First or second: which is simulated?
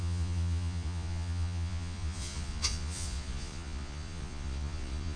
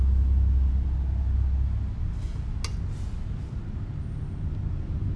first